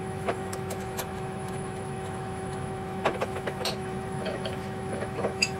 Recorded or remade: remade